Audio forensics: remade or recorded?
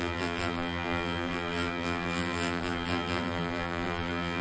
remade